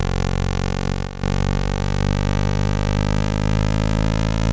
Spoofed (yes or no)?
yes